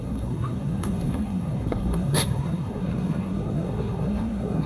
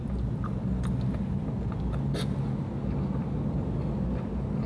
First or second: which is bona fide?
second